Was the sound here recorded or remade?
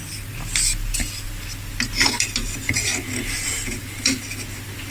recorded